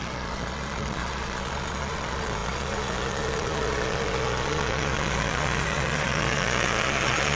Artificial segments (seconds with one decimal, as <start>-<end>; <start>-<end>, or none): 0.0-7.4